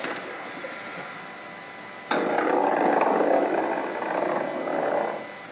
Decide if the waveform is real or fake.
real